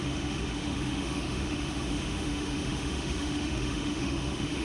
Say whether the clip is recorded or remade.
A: remade